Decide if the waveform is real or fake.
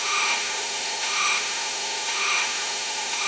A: fake